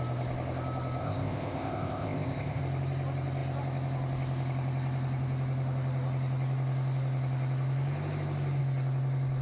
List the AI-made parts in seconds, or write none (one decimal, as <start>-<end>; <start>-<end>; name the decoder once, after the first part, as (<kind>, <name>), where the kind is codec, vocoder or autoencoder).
1.0-2.6 (codec, ZipCodec)